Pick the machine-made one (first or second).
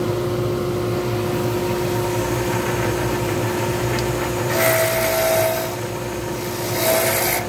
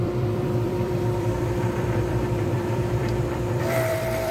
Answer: second